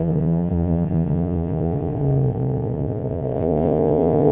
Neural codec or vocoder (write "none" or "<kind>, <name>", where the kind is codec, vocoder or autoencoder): vocoder, Vocos